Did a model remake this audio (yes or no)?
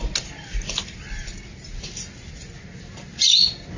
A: no